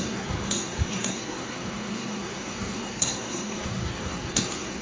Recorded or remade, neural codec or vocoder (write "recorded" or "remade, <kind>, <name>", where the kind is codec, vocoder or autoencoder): remade, codec, SNAC